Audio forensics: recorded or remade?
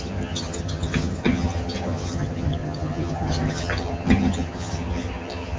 remade